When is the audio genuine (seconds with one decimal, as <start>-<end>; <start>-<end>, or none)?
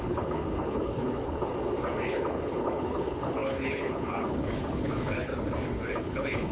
1.5-2.1; 5.3-6.0